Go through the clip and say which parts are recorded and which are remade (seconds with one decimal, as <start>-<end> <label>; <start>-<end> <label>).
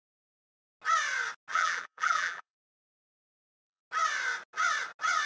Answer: 0.0-1.5 recorded; 1.5-3.8 remade; 3.8-5.3 recorded